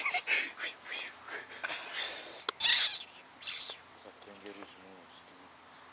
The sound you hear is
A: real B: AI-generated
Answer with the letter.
A